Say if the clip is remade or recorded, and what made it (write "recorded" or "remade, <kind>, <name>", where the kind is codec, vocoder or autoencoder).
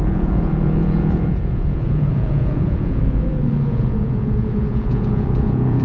remade, vocoder, Vocos